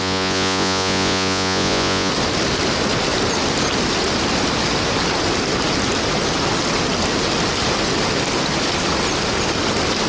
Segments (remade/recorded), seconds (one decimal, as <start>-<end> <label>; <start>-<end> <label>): 0.0-2.1 remade; 2.1-10.1 recorded

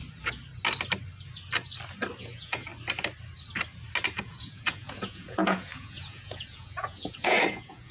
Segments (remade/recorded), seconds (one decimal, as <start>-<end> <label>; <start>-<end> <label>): 0.0-2.2 recorded; 2.2-2.7 remade; 2.7-4.2 recorded; 4.2-7.9 remade